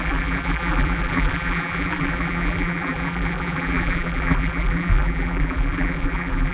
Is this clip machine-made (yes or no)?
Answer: yes